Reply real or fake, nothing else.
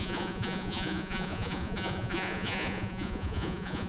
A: fake